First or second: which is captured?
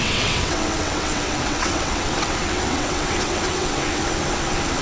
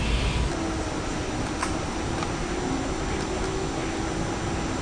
second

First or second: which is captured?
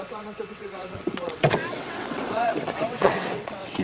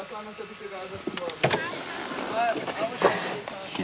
second